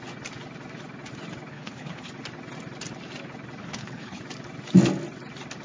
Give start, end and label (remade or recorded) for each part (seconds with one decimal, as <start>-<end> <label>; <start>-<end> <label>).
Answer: 0.0-1.5 recorded; 1.5-2.1 remade; 2.1-3.6 recorded; 3.6-4.2 remade; 4.2-5.6 recorded